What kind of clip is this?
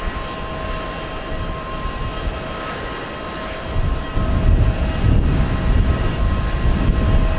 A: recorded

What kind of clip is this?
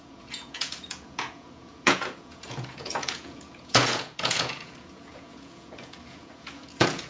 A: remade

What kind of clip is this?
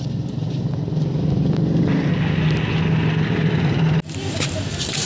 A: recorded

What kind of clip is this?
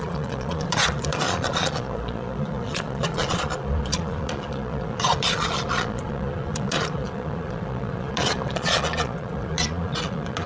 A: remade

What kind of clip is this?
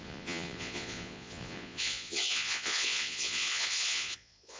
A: remade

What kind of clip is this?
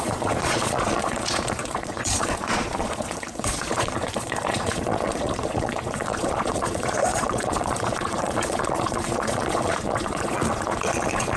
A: remade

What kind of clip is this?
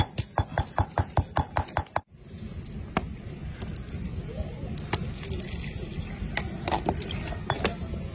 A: recorded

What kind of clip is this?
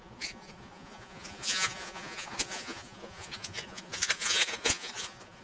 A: remade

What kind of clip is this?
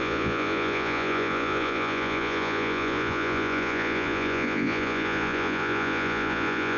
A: remade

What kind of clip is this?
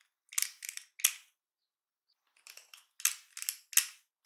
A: recorded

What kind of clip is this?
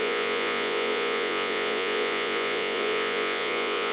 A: remade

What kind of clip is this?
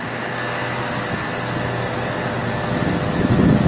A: recorded